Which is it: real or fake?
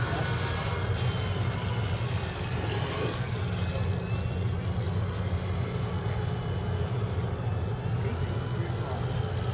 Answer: real